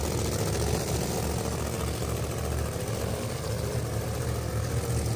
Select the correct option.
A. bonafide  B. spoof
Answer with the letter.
A